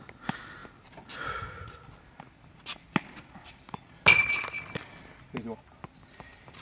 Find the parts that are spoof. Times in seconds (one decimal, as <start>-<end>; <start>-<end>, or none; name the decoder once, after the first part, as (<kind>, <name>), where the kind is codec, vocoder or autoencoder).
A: none